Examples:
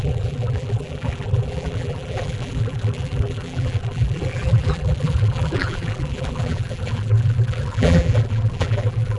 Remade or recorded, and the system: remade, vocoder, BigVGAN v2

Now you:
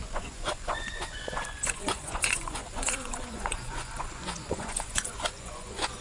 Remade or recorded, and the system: remade, vocoder, Vocos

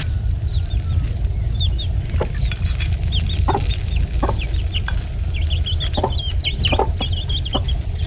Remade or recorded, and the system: recorded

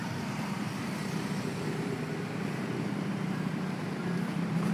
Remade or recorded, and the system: remade, vocoder, BigVGAN v2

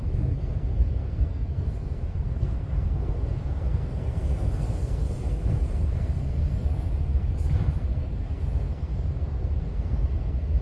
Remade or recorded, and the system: remade, codec, SNAC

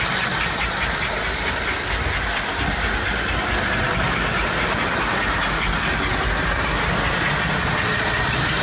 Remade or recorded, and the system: recorded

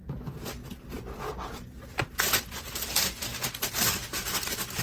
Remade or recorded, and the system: recorded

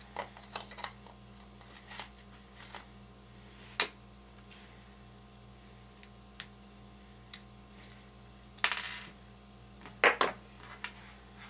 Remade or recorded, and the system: recorded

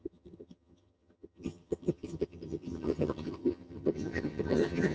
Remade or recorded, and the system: remade, vocoder, HiFi-GAN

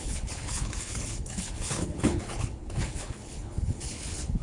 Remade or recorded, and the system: remade, codec, HILCodec